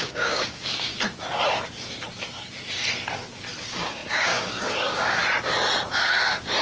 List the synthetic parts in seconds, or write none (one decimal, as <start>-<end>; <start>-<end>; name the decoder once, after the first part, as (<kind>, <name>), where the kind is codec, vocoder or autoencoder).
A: 0.0-0.9 (codec, DAC); 3.6-5.2